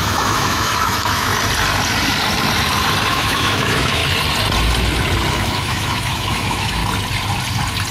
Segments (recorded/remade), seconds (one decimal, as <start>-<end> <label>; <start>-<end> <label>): 0.0-1.3 remade; 1.3-3.1 recorded; 3.1-4.0 remade; 4.0-5.3 recorded; 5.3-6.8 remade; 6.8-7.9 recorded